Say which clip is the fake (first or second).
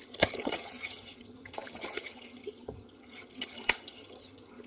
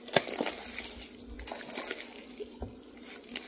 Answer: first